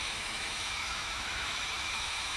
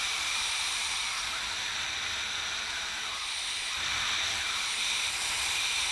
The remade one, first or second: first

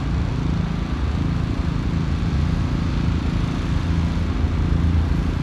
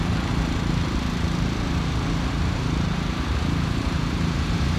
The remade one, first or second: second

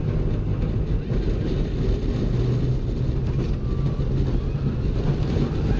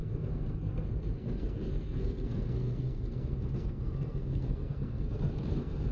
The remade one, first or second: second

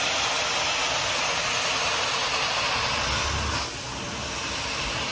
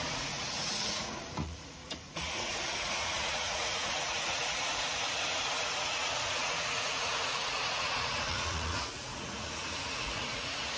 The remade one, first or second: second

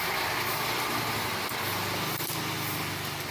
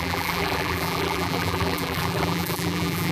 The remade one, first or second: second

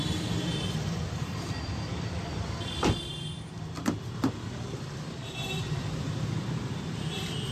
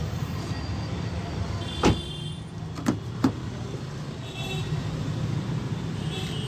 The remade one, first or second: first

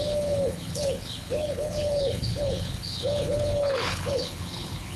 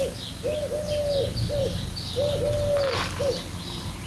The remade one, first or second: first